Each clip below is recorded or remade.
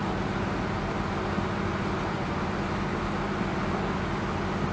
recorded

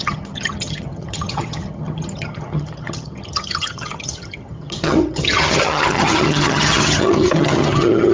remade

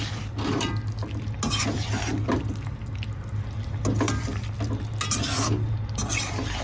recorded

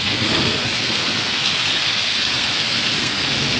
remade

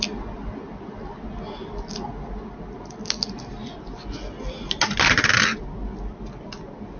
recorded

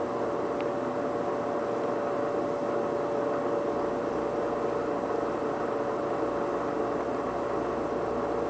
recorded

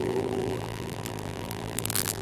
remade